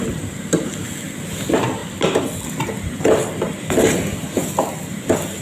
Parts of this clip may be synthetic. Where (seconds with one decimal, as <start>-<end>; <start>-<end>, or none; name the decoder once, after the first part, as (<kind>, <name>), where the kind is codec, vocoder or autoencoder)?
none